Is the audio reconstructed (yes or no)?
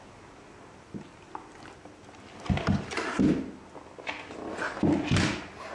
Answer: no